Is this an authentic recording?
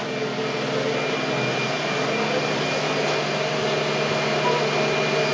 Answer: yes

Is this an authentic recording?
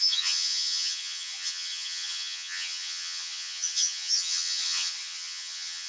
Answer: no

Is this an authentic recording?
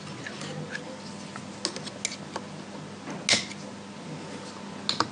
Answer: yes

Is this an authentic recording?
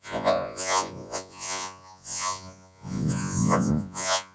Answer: no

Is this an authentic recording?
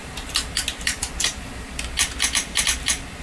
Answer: yes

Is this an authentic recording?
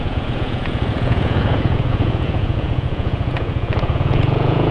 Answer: no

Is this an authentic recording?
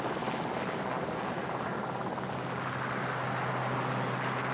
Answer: yes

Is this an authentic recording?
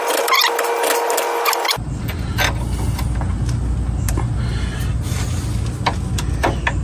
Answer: yes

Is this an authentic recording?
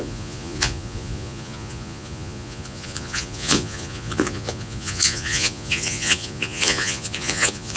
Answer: no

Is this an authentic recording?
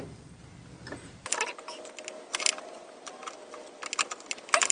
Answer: yes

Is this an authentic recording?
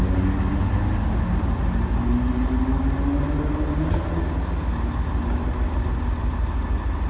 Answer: yes